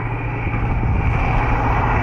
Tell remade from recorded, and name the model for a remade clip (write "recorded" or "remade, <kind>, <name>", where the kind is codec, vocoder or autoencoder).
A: recorded